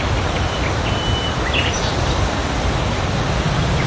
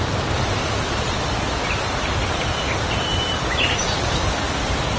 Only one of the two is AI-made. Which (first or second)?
second